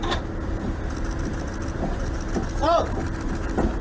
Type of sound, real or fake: real